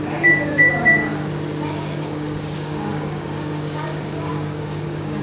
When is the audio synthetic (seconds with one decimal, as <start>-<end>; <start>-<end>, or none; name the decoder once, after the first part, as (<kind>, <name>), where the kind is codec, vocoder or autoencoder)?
0.0-1.1 (codec, DAC); 1.7-5.2